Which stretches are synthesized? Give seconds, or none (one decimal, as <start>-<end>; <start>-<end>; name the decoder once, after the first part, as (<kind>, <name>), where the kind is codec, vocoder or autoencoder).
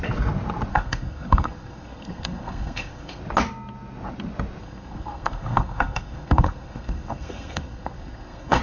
0.7-3.2 (codec, SNAC); 4.6-8.6